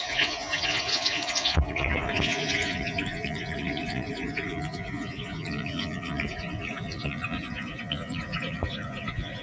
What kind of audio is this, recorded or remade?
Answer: remade